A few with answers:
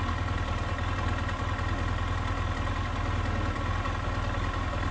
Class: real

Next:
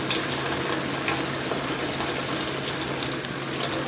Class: real